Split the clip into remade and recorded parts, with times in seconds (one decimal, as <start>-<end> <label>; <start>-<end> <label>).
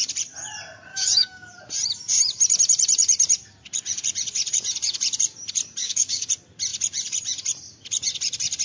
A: 0.0-0.9 recorded; 0.9-1.5 remade; 1.5-5.8 recorded; 5.8-6.3 remade; 6.3-8.6 recorded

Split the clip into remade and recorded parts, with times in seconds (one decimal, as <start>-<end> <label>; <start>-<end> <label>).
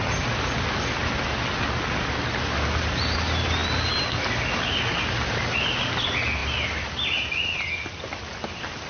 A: 0.0-8.9 recorded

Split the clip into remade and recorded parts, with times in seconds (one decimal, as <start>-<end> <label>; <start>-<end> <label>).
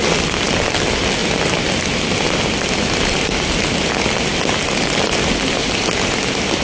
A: 0.0-6.6 recorded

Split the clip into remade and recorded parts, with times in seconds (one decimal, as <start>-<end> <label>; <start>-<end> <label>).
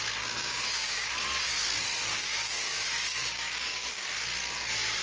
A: 0.0-0.4 recorded; 0.4-1.1 remade; 1.1-2.2 recorded; 2.2-4.1 remade; 4.1-5.0 recorded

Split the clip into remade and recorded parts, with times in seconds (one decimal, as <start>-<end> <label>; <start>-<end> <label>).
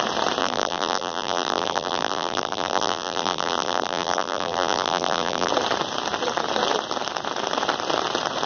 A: 0.0-0.4 recorded; 0.4-5.5 remade; 5.5-8.5 recorded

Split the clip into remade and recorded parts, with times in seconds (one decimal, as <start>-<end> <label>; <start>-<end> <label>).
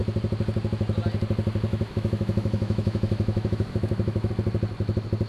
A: 0.0-1.7 recorded; 1.7-4.3 remade; 4.3-5.3 recorded